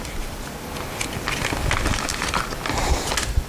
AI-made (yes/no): no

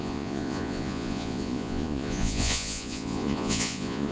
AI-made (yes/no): yes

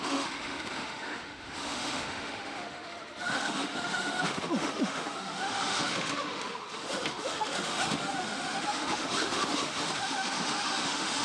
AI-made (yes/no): yes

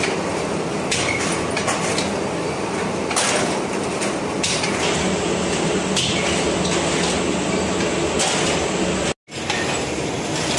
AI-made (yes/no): no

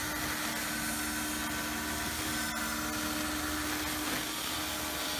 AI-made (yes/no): no